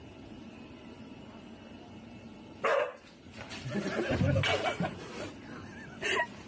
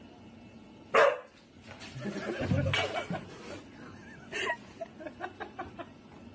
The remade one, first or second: first